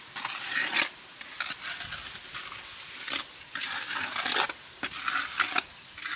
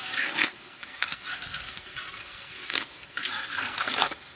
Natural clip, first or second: first